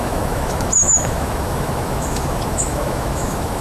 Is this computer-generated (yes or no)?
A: yes